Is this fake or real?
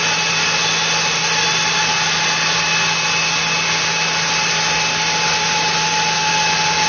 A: real